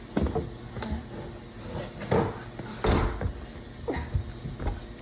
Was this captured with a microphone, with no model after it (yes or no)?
yes